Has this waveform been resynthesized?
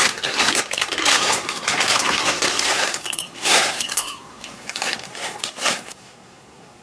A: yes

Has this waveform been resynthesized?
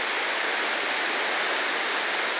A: no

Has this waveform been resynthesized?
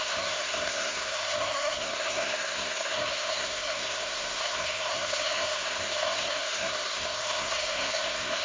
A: yes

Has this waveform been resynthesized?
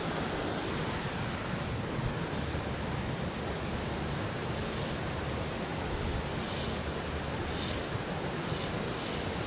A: no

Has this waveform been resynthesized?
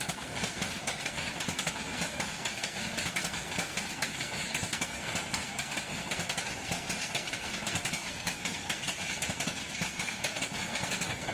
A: yes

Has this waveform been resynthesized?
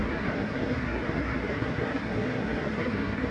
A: yes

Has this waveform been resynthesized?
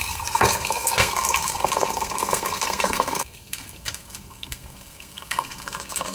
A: yes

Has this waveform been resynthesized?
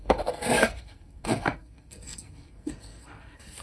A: yes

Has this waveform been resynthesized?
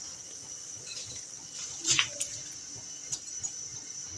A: no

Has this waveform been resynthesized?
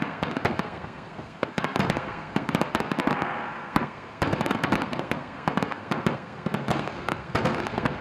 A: yes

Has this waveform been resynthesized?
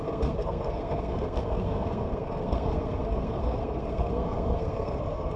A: yes